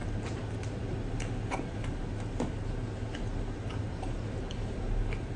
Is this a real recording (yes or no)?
yes